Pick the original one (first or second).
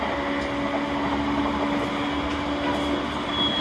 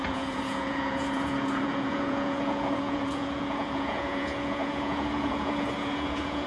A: first